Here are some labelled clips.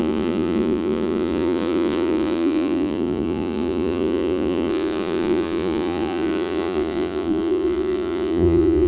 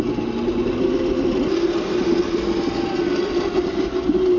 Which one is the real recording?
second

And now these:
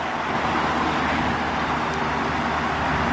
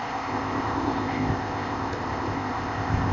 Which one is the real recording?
first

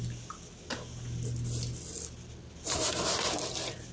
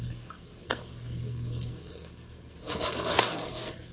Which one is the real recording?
first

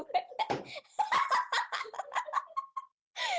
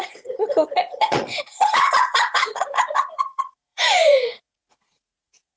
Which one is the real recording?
first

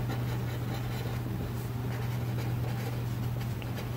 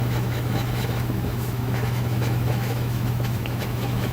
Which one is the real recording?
first